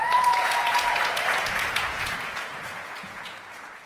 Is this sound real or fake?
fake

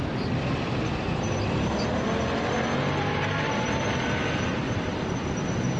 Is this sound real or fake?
real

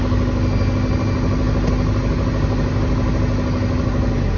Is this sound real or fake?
real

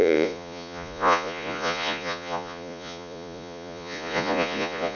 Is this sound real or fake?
fake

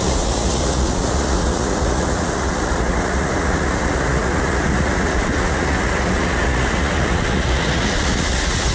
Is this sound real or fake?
fake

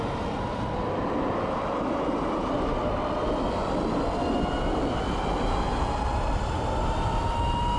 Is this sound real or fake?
real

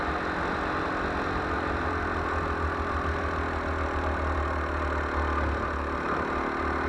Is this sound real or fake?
real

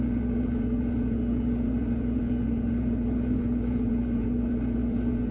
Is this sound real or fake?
fake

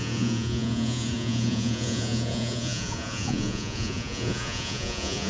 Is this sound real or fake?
fake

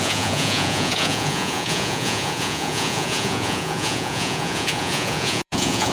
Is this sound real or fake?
fake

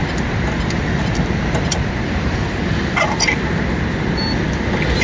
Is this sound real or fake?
real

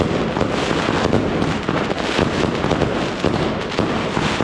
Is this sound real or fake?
real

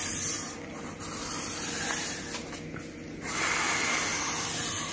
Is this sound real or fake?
real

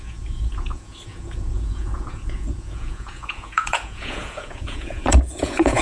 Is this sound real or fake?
fake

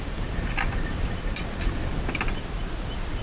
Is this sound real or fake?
real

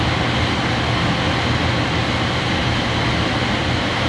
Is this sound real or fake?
real